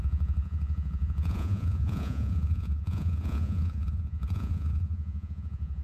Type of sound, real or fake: fake